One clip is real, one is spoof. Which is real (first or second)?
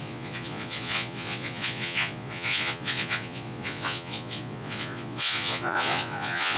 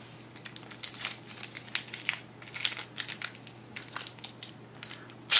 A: second